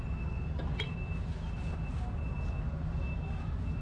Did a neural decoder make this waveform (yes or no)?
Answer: no